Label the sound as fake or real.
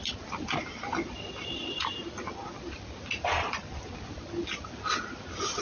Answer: real